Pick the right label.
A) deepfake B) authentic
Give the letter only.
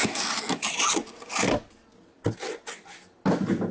B